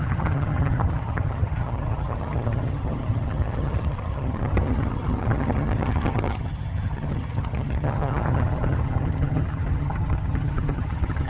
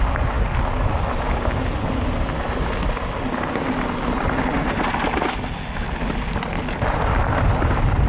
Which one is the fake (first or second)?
first